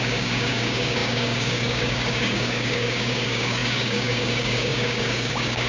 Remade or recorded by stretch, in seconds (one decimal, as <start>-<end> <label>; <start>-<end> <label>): 0.0-5.7 remade